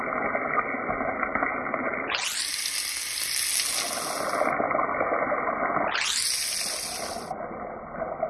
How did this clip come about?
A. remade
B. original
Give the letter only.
B